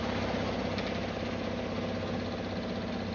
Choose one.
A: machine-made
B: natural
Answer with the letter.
B